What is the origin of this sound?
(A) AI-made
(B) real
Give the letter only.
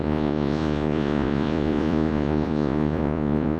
A